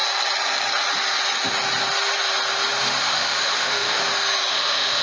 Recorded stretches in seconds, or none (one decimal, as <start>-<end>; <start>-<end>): 0.0-3.0; 4.0-4.5